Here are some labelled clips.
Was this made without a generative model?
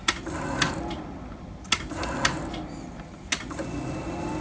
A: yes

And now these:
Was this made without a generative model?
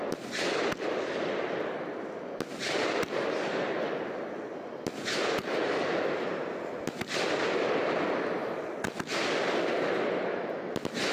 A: yes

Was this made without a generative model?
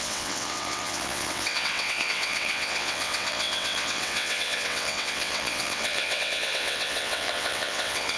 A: no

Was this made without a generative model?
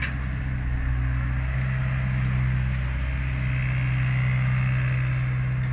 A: yes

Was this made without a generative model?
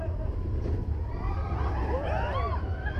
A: yes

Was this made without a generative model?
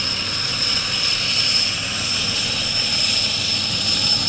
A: yes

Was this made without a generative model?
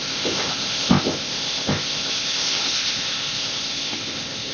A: no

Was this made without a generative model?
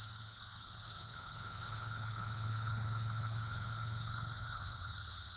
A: no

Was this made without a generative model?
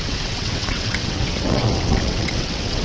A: no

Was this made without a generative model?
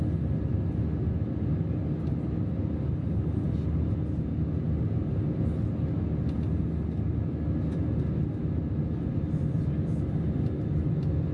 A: yes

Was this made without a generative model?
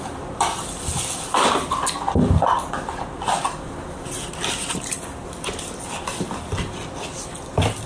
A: yes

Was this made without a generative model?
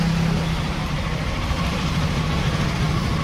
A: yes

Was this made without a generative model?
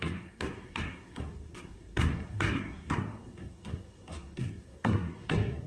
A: no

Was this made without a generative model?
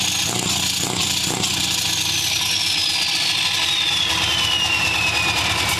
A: yes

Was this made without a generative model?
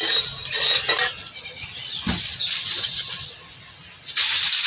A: yes